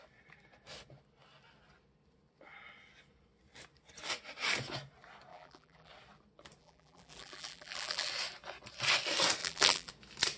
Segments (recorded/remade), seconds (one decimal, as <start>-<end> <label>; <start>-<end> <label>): 0.0-5.3 recorded; 5.3-5.9 remade; 5.9-6.6 recorded; 6.6-8.1 remade; 8.1-9.4 recorded; 9.4-9.9 remade; 9.9-10.4 recorded